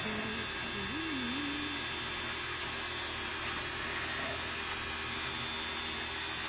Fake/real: real